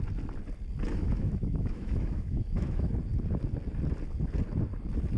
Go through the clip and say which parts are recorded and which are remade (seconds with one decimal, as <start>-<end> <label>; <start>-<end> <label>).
0.0-0.9 recorded; 0.9-2.9 remade; 2.9-5.2 recorded